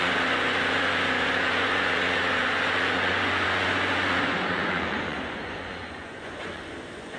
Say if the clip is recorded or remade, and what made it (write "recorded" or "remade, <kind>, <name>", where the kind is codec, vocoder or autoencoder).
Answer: remade, vocoder, Vocos